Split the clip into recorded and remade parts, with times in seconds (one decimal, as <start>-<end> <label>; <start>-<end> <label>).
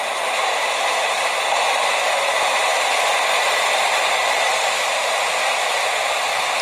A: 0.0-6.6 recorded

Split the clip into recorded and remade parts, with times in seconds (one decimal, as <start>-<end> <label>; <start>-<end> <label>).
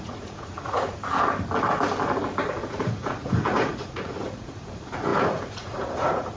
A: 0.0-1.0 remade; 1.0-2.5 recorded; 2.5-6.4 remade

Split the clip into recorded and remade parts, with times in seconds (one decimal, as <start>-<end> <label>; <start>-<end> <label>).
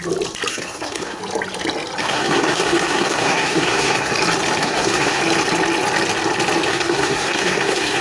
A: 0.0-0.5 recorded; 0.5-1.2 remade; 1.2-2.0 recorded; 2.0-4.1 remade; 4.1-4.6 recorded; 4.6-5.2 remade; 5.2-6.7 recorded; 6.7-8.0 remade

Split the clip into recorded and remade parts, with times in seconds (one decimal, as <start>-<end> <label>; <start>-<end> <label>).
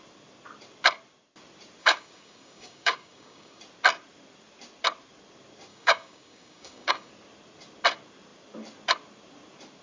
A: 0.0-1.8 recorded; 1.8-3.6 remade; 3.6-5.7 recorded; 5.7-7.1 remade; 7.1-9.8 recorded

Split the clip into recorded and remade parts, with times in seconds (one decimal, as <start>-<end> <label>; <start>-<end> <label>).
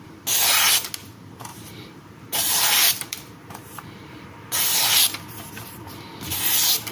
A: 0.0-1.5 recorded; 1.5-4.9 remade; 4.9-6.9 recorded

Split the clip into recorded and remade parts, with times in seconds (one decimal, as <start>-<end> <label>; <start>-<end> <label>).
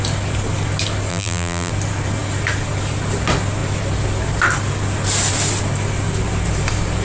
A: 0.0-1.1 recorded; 1.1-1.7 remade; 1.7-7.0 recorded